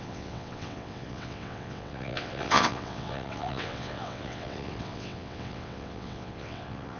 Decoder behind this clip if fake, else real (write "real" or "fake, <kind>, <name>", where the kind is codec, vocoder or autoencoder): fake, vocoder, WaveNeXt